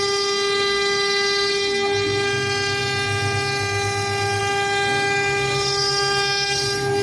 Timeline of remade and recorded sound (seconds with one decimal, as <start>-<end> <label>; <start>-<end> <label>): 0.0-7.0 recorded